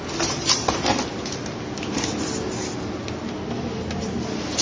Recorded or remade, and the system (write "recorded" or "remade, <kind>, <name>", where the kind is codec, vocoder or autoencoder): recorded